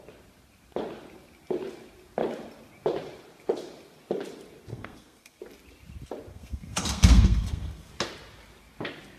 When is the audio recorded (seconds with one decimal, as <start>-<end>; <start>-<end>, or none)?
0.0-4.7; 5.4-6.3; 7.9-9.2